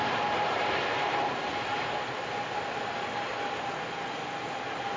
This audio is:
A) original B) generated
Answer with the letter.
A